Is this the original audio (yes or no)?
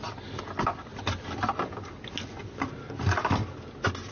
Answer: yes